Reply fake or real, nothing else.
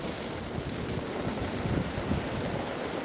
real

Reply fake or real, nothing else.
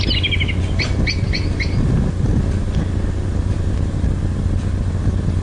real